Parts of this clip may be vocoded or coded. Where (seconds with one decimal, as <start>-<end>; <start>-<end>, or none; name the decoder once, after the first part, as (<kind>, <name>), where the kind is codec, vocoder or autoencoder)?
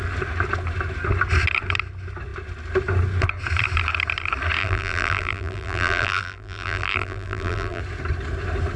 4.6-7.8 (vocoder, BigVGAN v2)